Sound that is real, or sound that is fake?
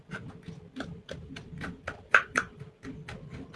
real